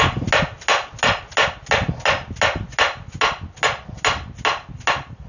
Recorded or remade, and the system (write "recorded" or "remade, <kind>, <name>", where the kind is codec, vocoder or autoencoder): recorded